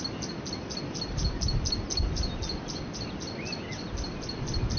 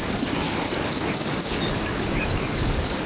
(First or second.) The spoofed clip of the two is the second